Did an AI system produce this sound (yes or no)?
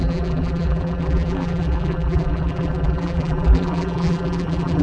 yes